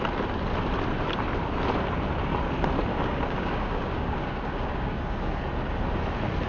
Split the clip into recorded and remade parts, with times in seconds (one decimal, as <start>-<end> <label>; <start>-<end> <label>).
0.0-2.9 recorded; 2.9-5.4 remade; 5.4-6.5 recorded